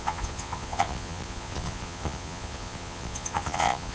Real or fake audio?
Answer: fake